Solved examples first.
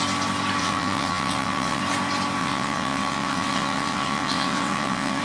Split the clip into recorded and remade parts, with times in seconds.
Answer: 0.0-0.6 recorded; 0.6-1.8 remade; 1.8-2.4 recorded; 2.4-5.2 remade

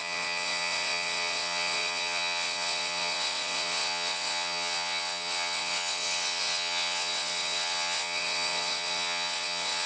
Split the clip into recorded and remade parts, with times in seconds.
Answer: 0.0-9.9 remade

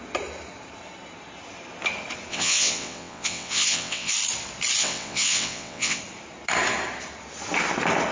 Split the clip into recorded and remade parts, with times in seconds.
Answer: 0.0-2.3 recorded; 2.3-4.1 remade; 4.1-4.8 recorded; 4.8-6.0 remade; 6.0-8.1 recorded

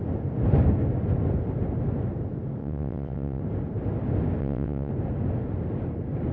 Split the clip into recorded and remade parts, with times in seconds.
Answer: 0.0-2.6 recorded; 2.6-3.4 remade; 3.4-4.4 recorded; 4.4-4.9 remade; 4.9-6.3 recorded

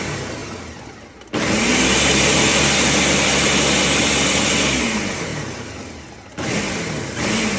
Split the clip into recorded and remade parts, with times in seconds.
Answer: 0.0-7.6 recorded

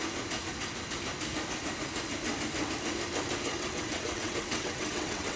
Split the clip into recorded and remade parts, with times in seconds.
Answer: 0.0-3.5 recorded; 3.5-5.4 remade

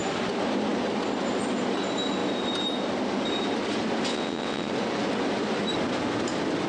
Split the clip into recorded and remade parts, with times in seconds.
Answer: 0.0-4.1 recorded; 4.1-4.7 remade; 4.7-6.7 recorded

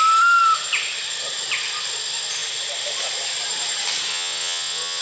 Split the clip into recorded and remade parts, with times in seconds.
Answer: 0.0-4.1 recorded; 4.1-5.0 remade